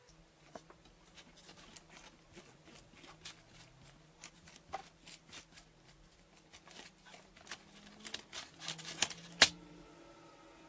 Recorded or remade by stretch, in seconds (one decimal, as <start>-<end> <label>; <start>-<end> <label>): 0.0-10.7 recorded